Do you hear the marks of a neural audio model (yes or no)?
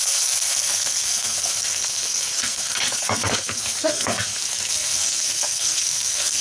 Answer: yes